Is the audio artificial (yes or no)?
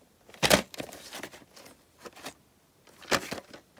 no